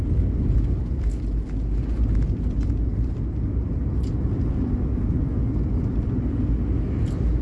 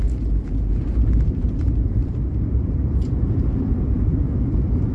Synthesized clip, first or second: second